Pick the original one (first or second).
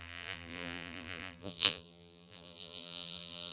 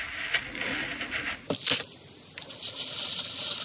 second